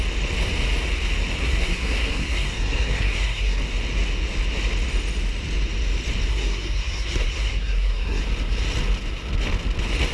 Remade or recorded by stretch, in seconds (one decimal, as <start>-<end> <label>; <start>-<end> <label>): 0.0-1.4 recorded; 1.4-3.6 remade; 3.6-6.3 recorded; 6.3-8.2 remade; 8.2-10.1 recorded